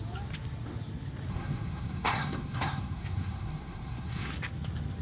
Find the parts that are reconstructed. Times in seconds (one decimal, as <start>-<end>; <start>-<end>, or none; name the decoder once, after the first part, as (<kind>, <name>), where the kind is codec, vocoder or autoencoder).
1.3-4.3 (codec, SNAC)

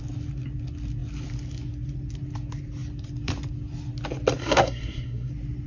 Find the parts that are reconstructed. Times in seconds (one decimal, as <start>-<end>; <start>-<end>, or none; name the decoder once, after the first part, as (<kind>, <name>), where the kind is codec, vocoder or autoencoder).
4.4-5.3 (codec, SNAC)

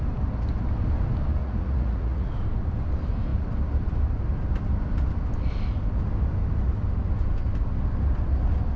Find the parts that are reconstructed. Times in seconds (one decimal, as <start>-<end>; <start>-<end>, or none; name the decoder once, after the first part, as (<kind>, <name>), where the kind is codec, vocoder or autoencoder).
1.4-2.3 (vocoder, Vocos)

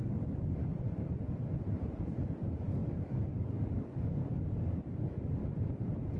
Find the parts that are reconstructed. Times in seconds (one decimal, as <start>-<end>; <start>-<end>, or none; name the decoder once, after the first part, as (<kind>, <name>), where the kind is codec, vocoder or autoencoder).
0.0-0.6 (codec, DAC); 2.2-5.4

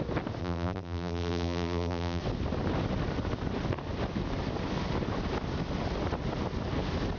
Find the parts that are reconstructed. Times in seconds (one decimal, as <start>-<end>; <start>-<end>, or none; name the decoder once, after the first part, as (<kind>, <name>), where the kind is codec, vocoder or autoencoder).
0.4-2.2 (vocoder, BigVGAN v2)

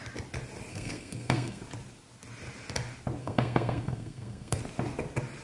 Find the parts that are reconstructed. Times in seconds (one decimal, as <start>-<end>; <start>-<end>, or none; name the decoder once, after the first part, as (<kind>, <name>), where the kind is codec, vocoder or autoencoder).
0.7-1.6 (codec, SNAC); 3.2-4.6